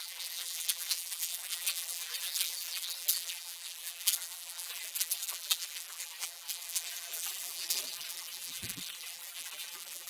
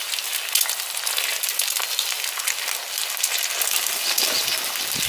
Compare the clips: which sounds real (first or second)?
second